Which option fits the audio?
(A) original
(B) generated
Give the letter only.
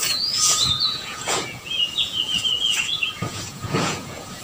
B